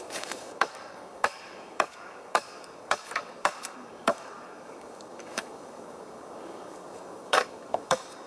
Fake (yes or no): yes